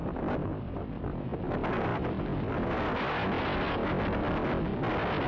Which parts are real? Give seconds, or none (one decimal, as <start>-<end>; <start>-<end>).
0.5-1.2; 1.9-5.3